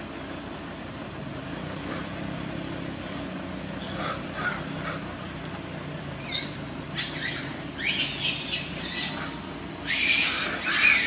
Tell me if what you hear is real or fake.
real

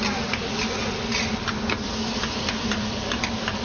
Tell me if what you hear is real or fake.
real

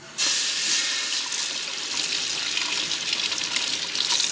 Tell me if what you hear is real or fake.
real